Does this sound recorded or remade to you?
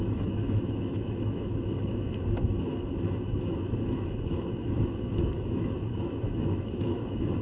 remade